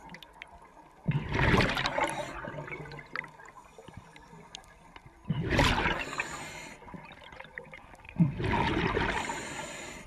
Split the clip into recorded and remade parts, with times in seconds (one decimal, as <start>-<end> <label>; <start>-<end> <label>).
0.0-10.1 recorded